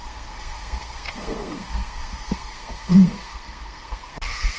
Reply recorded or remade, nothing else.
remade